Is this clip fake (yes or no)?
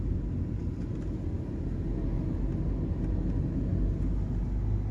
no